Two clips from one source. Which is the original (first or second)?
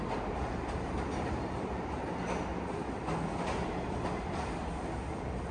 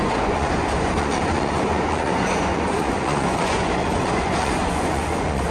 first